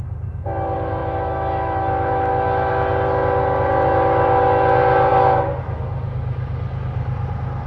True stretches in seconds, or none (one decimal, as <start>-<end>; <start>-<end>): 0.0-1.0; 2.7-7.7